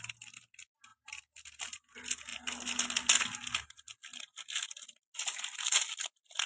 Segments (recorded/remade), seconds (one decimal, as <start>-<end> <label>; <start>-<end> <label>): 0.0-6.5 recorded